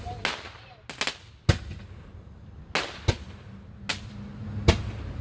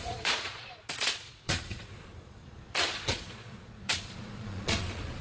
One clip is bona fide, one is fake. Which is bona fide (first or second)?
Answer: first